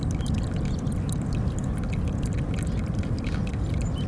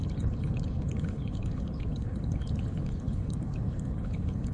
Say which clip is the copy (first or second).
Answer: second